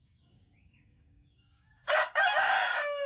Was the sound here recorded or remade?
remade